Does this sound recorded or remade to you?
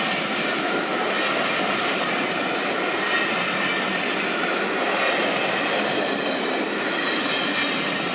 recorded